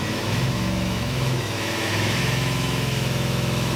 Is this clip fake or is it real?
fake